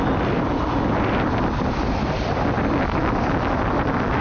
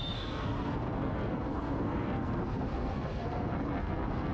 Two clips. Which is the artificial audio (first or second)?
second